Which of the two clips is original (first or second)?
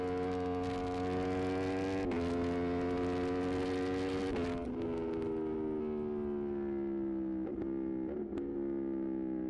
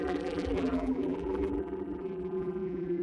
first